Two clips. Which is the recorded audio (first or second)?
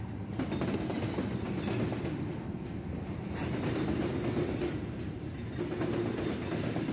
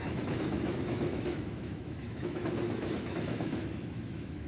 first